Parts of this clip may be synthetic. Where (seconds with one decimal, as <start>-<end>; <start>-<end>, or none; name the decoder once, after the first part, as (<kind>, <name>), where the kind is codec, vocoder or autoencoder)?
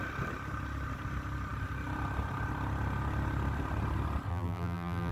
4.3-5.1 (vocoder, BigVGAN v2)